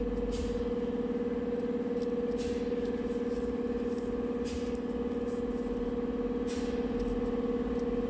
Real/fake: real